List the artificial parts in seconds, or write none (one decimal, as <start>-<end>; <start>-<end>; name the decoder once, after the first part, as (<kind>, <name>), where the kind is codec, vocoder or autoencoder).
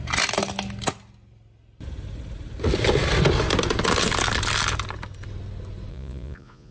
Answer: 5.9-6.7 (vocoder, Vocos)